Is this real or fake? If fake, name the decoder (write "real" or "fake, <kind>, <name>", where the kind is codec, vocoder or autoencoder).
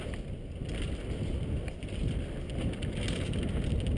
real